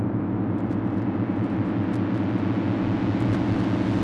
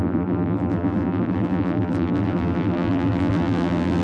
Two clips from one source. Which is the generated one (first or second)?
second